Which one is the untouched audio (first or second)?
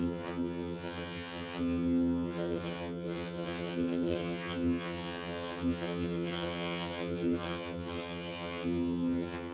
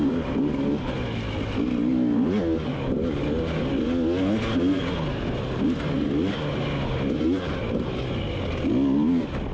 second